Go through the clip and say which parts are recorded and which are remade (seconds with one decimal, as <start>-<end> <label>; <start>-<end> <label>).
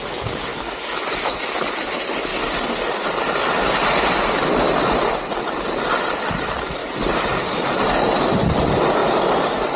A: 0.0-0.5 recorded; 0.5-1.5 remade; 1.5-9.8 recorded